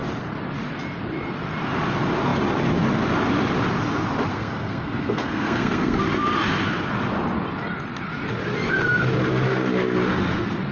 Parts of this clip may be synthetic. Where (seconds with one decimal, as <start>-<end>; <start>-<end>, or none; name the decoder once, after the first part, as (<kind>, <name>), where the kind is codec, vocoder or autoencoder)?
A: 4.3-6.0 (codec, SNAC)